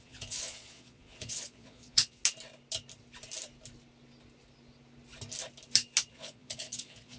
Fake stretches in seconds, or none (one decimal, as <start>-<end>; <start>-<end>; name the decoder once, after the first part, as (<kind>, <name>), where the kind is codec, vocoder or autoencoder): 0.0-2.2 (vocoder, Vocos); 6.1-7.2